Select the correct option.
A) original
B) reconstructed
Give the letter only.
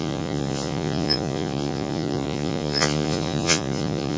B